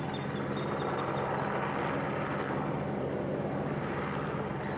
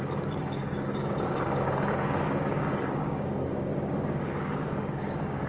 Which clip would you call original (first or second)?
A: first